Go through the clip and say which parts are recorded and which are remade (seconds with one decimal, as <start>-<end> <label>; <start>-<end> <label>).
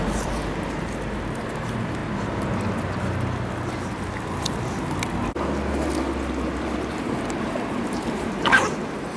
0.0-2.0 remade; 2.0-6.9 recorded; 6.9-9.2 remade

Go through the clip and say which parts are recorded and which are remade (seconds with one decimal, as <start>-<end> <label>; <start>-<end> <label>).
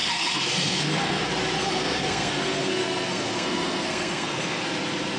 0.0-1.2 remade; 1.2-1.6 recorded; 1.6-4.7 remade; 4.7-5.2 recorded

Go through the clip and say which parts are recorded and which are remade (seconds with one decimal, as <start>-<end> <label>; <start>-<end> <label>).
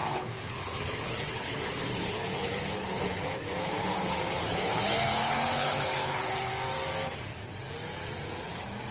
0.0-6.5 remade; 6.5-8.9 recorded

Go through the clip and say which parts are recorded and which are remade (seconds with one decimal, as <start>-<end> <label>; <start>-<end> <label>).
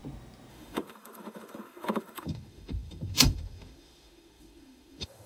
0.0-0.5 recorded; 0.5-5.3 remade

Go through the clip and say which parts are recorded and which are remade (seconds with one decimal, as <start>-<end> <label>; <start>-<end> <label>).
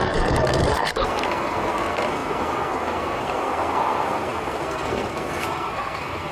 0.0-6.3 remade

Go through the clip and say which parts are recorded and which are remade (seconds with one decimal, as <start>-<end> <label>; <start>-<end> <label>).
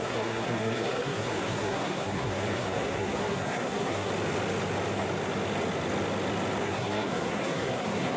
0.0-4.1 remade; 4.1-6.6 recorded; 6.6-8.2 remade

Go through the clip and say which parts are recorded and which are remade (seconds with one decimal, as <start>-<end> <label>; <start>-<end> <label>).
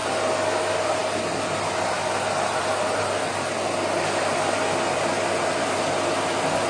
0.0-6.7 recorded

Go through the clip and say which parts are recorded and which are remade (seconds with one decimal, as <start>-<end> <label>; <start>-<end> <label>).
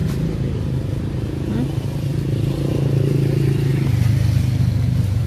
0.0-5.3 recorded